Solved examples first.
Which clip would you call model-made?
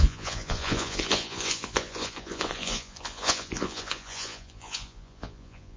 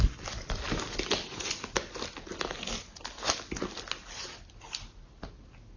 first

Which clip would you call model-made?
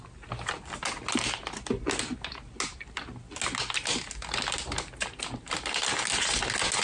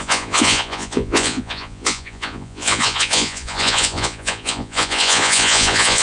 second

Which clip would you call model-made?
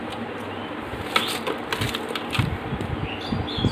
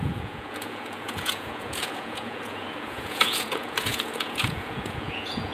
second